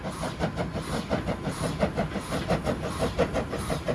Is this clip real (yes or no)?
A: yes